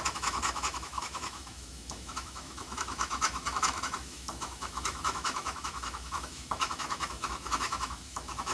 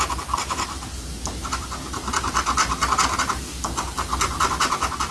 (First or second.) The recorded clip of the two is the second